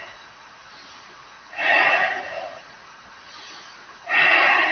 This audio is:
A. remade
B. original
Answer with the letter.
A